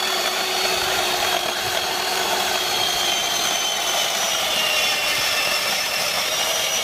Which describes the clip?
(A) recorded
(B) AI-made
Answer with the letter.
B